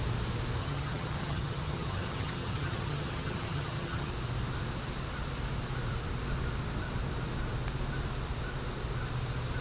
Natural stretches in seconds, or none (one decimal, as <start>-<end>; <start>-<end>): 0.0-0.6; 4.1-9.6